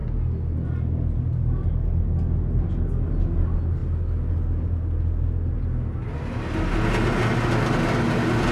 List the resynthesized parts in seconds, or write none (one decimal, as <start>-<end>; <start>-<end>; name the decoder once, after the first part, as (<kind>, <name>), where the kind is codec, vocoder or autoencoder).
none